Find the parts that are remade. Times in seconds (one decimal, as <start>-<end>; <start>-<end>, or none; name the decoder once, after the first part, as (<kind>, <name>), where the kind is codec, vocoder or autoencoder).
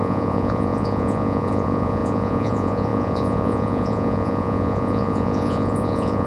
0.0-6.3 (vocoder, Vocos)